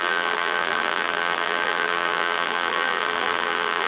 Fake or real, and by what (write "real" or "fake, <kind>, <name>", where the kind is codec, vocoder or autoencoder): fake, vocoder, BigVGAN v2